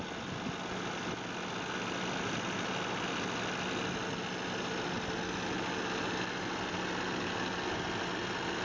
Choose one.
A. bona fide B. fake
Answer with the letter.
A